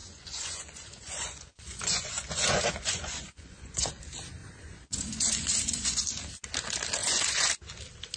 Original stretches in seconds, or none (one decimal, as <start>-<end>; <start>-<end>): 3.9-4.4; 6.0-7.0; 7.5-8.2